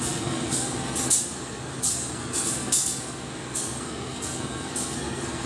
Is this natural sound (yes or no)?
no